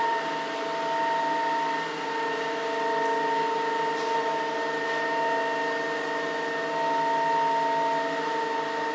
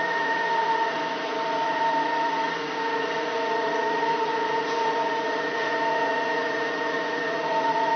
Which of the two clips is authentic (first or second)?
first